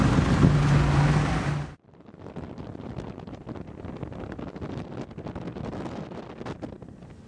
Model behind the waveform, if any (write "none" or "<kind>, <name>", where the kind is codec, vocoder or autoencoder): none